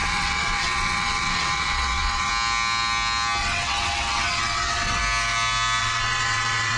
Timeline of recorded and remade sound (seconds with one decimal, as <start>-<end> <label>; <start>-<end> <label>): 0.0-2.3 remade; 2.3-3.4 recorded; 3.4-5.0 remade; 5.0-5.8 recorded; 5.8-6.8 remade